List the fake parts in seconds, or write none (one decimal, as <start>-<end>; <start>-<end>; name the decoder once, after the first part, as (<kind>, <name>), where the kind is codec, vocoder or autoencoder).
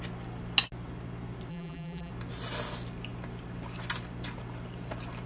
1.5-2.1 (vocoder, BigVGAN v2)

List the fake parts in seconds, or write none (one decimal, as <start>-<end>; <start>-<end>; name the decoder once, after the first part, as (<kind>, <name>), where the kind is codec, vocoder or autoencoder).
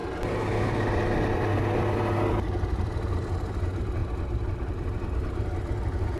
0.0-3.5 (vocoder, BigVGAN v2)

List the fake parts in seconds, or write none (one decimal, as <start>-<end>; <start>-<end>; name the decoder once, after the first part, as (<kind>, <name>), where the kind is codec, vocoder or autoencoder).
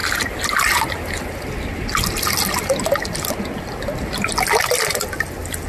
none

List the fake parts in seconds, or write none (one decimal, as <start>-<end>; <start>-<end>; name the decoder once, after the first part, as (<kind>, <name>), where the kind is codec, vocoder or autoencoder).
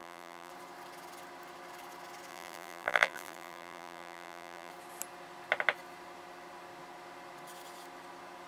0.0-0.5 (vocoder, BigVGAN v2); 2.3-4.7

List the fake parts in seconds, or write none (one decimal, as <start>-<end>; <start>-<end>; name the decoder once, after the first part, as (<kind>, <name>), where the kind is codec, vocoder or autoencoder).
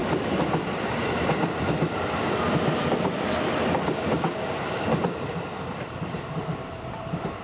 0.0-7.4 (vocoder, BigVGAN v2)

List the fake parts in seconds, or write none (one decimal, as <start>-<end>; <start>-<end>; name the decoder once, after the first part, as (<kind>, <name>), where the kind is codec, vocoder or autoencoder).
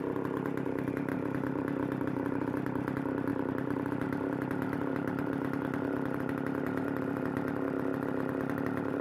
1.1-2.8 (vocoder, BigVGAN v2); 3.3-7.1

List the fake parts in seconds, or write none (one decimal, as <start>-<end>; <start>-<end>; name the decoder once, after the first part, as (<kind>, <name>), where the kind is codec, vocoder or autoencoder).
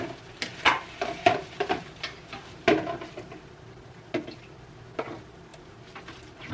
5.5-6.0 (vocoder, BigVGAN v2)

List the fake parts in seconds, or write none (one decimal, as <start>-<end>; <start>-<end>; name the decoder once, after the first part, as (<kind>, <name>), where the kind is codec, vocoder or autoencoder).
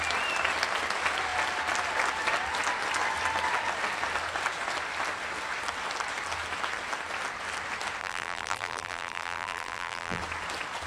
8.0-10.2 (vocoder, BigVGAN v2)